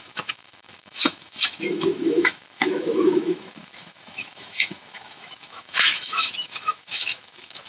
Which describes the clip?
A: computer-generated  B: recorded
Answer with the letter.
A